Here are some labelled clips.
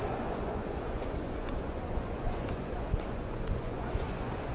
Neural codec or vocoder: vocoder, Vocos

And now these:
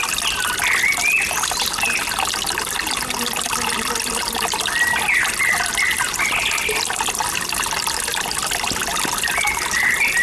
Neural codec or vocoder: none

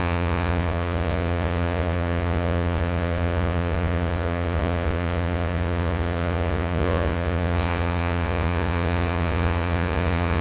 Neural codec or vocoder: vocoder, Vocos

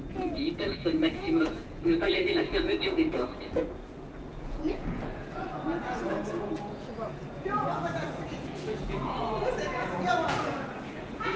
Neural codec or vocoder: vocoder, Vocos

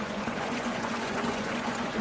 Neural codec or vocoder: vocoder, Vocos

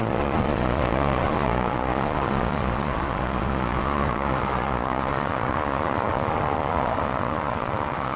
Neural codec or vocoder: vocoder, Vocos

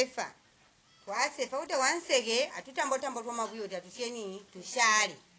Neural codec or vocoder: none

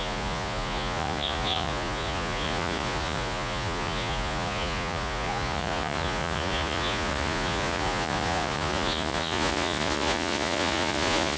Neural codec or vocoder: vocoder, Vocos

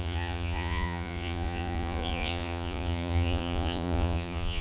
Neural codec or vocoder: vocoder, Vocos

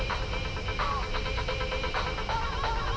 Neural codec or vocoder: none